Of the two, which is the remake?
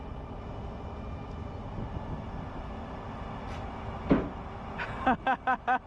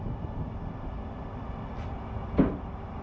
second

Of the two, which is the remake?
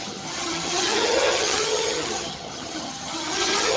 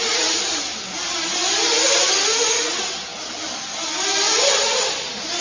first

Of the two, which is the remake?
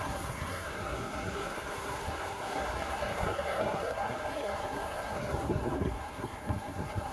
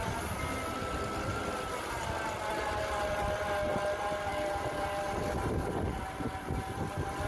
first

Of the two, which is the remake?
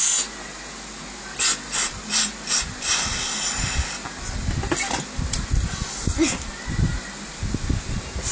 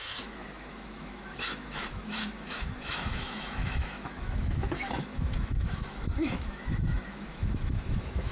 second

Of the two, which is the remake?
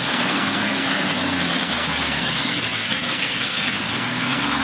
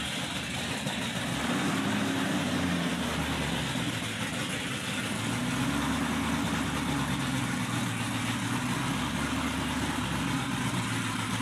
first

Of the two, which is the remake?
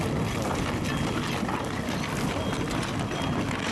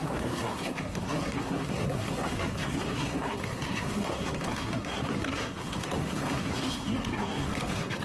second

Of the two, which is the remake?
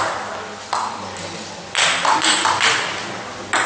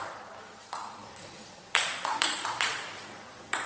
second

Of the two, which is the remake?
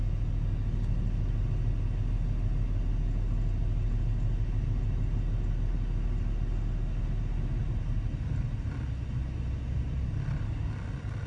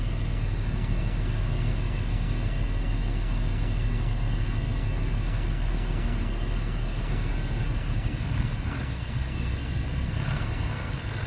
second